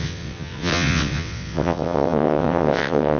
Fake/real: fake